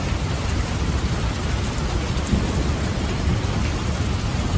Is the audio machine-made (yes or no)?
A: no